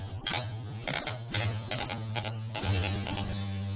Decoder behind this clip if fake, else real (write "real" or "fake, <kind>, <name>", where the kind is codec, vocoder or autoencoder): real